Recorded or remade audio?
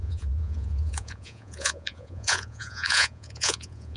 remade